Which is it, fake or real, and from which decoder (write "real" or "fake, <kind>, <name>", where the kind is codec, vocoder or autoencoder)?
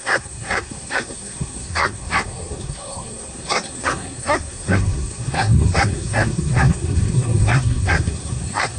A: fake, codec, SNAC